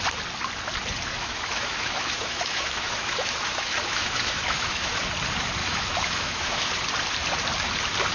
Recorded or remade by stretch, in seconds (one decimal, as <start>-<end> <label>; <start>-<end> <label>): 0.0-1.2 recorded; 1.2-5.0 remade; 5.0-5.6 recorded; 5.6-6.7 remade; 6.7-8.1 recorded

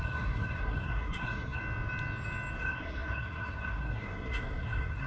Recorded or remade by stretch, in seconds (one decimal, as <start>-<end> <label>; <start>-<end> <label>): 0.0-1.6 remade; 1.6-2.6 recorded; 2.6-5.1 remade

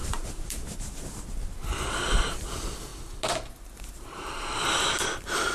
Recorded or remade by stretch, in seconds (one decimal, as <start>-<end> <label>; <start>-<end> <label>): 0.0-0.9 remade; 0.9-5.5 recorded

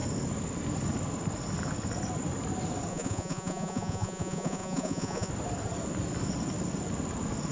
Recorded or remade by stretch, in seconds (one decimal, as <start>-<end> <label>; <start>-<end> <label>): 0.0-2.9 recorded; 2.9-5.3 remade; 5.3-7.5 recorded

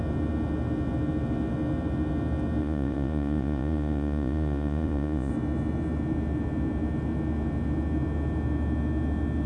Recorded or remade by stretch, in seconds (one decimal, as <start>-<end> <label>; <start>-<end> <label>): 0.0-2.6 recorded; 2.6-5.3 remade; 5.3-9.5 recorded